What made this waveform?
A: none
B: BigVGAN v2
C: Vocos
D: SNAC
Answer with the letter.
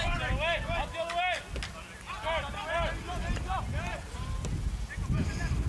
A